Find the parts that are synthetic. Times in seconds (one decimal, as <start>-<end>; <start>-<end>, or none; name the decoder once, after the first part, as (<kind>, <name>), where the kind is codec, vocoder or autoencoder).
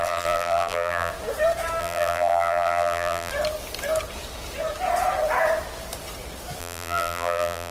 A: 0.0-1.1 (vocoder, BigVGAN v2); 1.8-3.3; 6.6-7.7